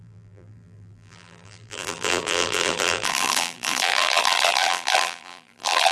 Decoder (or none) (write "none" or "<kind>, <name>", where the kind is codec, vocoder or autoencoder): vocoder, BigVGAN v2